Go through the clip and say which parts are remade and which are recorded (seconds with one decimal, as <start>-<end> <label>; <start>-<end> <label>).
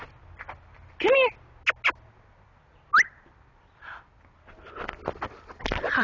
0.0-6.0 recorded